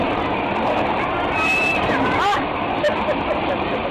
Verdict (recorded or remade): remade